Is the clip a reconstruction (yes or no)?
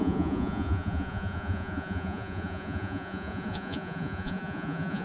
yes